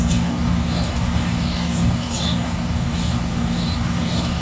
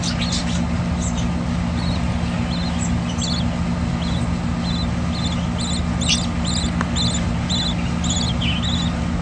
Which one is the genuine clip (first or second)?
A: second